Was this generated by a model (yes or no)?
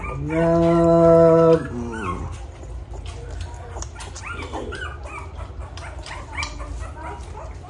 no